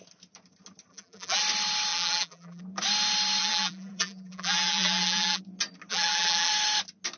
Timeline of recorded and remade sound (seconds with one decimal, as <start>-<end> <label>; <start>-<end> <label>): 0.0-0.9 recorded; 0.9-1.4 remade; 1.4-1.9 recorded; 1.9-2.6 remade; 2.6-3.4 recorded; 3.4-5.4 remade; 5.4-5.9 recorded; 5.9-6.5 remade; 6.5-7.2 recorded